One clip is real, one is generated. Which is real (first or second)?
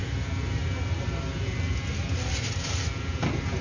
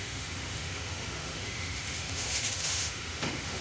first